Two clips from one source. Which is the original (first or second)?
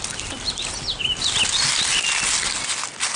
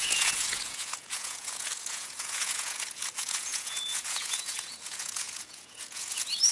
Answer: first